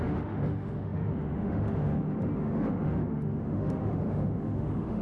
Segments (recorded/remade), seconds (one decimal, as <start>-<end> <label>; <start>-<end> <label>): 0.0-5.0 remade

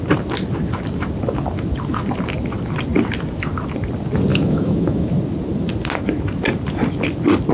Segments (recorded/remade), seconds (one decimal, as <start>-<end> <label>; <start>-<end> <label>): 0.0-4.3 recorded; 4.3-5.1 remade; 5.1-7.5 recorded

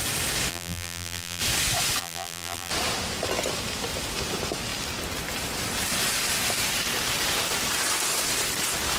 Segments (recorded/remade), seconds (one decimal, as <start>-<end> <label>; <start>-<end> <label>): 0.0-0.5 recorded; 0.5-1.4 remade; 1.4-2.0 recorded; 2.0-2.7 remade; 2.7-9.0 recorded